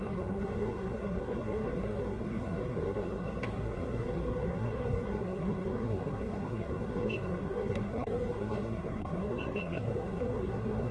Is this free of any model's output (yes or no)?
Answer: no